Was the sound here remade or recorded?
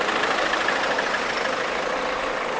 recorded